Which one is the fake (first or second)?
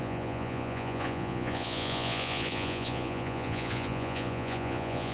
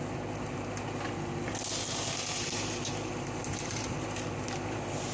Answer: first